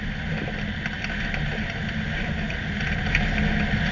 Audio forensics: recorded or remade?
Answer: recorded